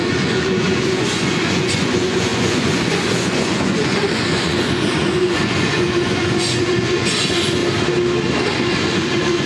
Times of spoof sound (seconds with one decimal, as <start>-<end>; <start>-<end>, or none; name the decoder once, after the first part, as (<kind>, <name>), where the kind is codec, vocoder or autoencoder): 0.0-7.6 (vocoder, Vocos); 8.5-9.5